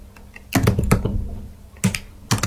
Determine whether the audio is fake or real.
real